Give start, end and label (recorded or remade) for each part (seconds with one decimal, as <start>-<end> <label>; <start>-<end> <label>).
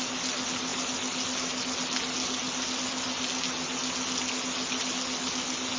0.0-5.8 recorded